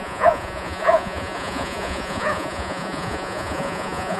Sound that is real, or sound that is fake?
fake